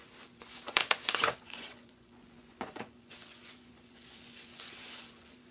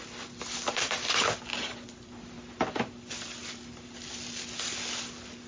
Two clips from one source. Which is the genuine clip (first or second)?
second